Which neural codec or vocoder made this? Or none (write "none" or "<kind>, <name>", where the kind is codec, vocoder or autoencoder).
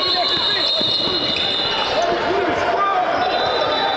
none